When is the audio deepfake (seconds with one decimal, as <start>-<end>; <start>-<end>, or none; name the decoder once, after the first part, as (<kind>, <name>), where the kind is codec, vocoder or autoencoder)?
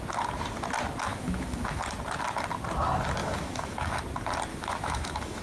1.1-1.8 (autoencoder, DAC-VAE); 3.2-4.0; 4.5-5.4